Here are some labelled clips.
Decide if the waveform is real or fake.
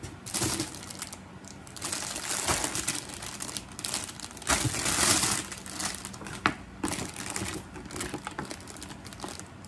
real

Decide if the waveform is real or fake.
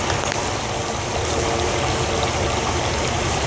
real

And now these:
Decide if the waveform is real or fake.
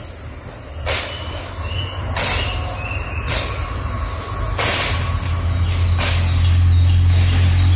real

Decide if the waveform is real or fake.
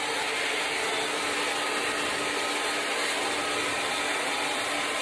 real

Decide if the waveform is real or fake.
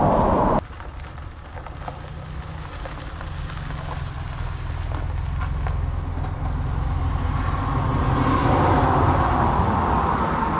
real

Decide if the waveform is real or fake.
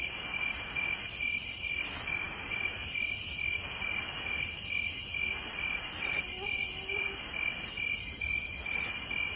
real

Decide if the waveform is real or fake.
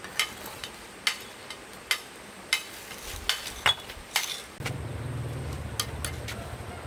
real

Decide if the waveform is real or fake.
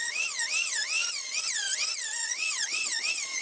fake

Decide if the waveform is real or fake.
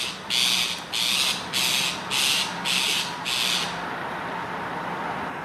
real